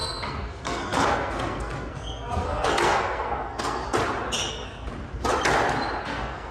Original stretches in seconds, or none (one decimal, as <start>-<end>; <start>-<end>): 3.8-4.5; 4.9-6.0